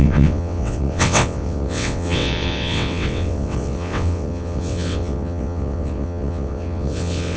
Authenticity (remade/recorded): remade